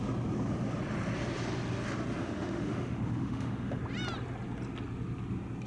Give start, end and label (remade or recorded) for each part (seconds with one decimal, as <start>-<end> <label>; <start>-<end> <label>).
0.0-2.2 recorded; 2.2-3.8 remade; 3.8-5.7 recorded